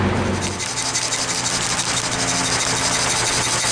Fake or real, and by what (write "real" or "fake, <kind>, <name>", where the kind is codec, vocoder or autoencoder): real